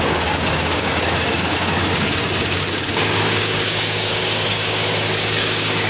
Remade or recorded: remade